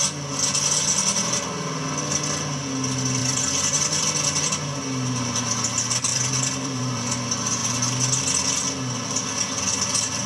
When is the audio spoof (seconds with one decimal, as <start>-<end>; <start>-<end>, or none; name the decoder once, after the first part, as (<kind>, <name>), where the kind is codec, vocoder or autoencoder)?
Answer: 3.2-4.0 (vocoder, BigVGAN v2); 6.1-7.1